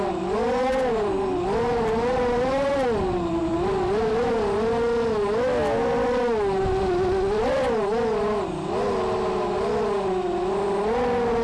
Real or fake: real